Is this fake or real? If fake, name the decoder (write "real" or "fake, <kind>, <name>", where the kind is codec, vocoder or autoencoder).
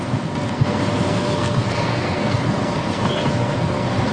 fake, codec, SNAC